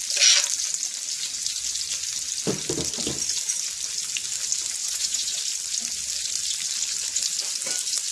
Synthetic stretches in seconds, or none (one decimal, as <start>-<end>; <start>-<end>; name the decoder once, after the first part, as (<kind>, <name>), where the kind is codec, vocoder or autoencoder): 4.8-5.4 (vocoder, Vocos)